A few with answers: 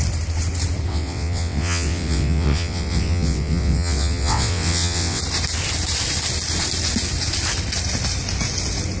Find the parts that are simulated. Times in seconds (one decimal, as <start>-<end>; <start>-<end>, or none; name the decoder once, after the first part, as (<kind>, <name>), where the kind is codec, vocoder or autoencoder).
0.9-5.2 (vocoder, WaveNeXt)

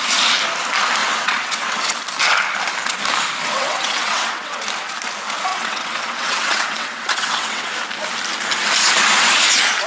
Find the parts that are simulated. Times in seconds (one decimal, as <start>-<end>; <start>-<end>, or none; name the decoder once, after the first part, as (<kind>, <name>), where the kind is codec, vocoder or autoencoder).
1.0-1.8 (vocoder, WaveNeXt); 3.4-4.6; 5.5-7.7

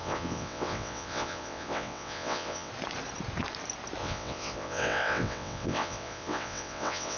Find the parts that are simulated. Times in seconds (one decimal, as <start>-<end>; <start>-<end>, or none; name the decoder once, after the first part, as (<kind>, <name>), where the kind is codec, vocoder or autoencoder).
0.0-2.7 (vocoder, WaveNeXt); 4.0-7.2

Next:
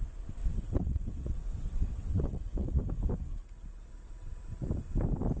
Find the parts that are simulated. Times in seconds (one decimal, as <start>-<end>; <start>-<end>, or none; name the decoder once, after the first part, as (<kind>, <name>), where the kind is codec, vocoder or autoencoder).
0.4-2.8 (vocoder, WaveNeXt)

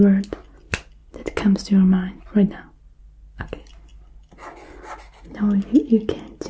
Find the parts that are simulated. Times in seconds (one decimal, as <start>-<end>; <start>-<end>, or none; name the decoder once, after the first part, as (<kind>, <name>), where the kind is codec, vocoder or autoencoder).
none

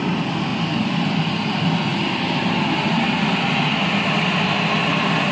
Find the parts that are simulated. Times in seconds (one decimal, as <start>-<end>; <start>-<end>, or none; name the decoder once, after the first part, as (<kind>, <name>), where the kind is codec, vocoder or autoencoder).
none

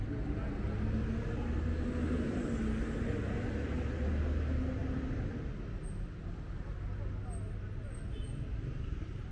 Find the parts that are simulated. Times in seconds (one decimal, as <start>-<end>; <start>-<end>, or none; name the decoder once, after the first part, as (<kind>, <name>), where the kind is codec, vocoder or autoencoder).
none